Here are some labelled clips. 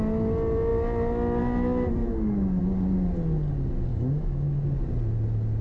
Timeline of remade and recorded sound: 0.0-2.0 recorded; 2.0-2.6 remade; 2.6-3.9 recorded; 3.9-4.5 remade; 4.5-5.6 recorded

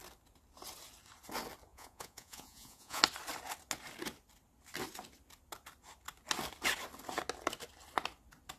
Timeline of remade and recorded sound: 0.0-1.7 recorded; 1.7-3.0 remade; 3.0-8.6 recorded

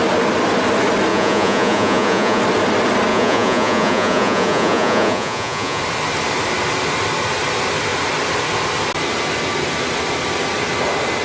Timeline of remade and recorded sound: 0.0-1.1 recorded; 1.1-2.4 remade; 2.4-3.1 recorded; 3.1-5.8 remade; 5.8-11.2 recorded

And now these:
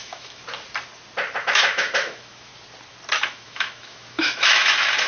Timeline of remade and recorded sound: 0.0-0.4 remade; 0.4-1.4 recorded; 1.4-2.5 remade; 2.5-3.2 recorded; 3.2-5.1 remade